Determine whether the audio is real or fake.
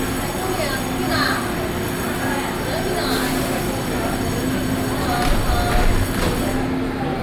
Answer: real